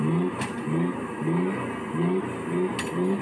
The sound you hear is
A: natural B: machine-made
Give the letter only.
A